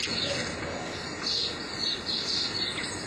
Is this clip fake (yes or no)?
no